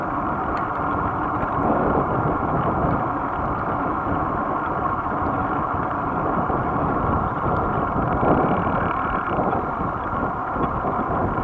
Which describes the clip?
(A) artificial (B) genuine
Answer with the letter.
A